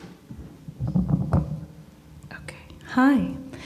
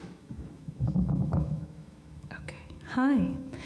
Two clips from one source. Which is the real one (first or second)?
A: first